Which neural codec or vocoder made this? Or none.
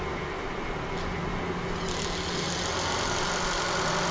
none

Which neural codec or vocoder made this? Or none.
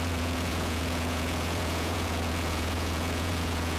vocoder, Vocos